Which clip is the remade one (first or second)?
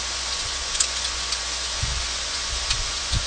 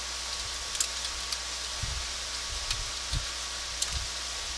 first